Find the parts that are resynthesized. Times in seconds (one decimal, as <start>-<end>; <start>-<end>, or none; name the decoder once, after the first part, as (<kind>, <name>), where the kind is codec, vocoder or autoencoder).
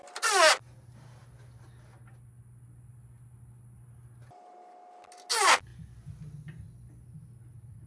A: none